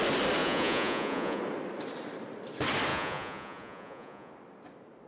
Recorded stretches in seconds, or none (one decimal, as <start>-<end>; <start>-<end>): 0.0-0.4; 1.4-2.9; 4.3-5.1